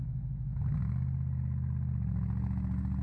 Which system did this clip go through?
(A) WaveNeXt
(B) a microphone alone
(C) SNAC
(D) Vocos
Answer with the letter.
B